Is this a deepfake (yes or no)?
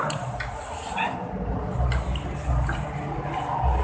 no